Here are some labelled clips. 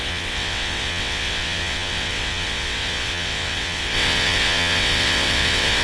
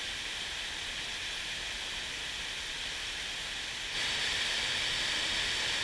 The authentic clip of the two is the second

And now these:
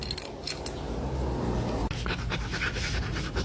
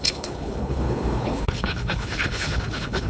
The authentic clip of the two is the first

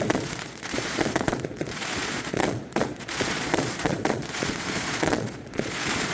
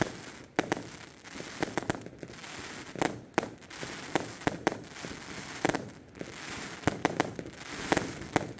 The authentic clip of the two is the second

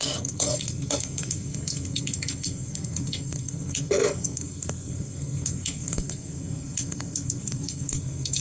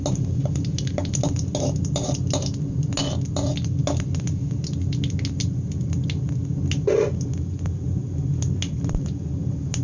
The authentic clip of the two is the second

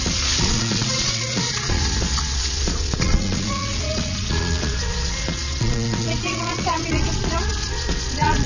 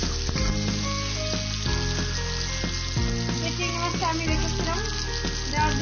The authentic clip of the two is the second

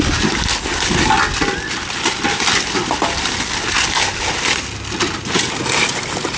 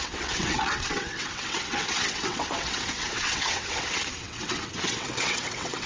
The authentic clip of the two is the first